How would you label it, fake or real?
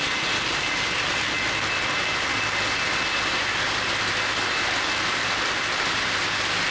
real